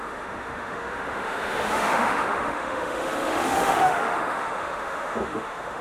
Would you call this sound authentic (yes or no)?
no